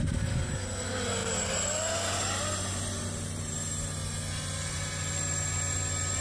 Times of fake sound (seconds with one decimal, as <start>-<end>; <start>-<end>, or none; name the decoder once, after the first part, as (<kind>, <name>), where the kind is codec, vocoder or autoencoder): 1.2-4.9 (vocoder, BigVGAN v2)